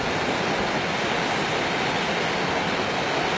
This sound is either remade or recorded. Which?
recorded